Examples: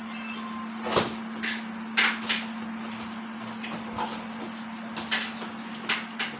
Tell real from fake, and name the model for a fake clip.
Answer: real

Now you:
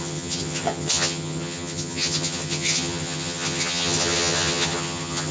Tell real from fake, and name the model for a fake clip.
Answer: fake, vocoder, HiFi-GAN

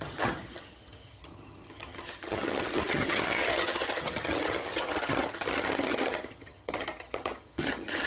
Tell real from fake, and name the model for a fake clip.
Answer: fake, vocoder, HiFi-GAN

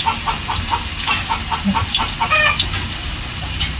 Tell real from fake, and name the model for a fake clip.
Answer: real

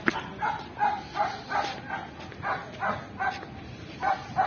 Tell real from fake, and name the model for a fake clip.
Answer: real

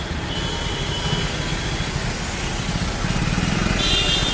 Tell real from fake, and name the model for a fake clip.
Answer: real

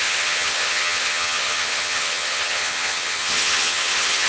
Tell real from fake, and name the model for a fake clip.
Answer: fake, vocoder, HiFi-GAN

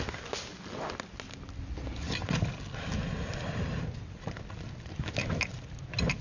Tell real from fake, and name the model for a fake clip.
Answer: real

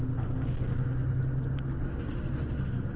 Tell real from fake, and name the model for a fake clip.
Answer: real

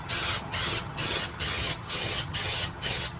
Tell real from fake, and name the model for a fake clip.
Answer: fake, vocoder, HiFi-GAN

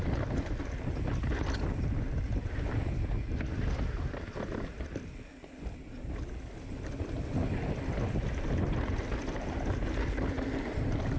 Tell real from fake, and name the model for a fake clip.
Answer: real